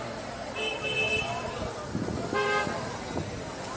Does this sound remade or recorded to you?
recorded